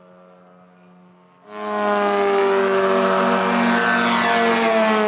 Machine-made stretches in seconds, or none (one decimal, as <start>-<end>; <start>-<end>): none

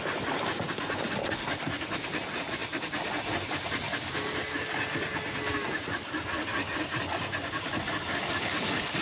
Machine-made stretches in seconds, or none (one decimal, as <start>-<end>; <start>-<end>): none

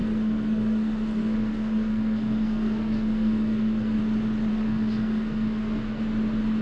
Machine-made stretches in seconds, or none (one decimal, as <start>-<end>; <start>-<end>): 0.0-4.0; 4.5-6.0

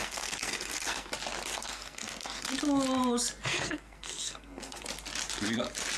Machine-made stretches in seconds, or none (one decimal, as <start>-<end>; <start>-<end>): 0.0-1.1; 1.5-2.5; 3.5-4.8

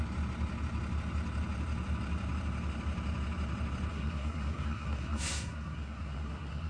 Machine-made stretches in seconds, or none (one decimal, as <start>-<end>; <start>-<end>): 3.9-6.7

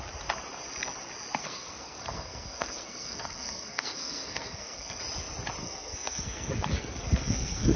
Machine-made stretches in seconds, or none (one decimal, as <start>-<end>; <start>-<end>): 1.4-5.0; 5.6-7.8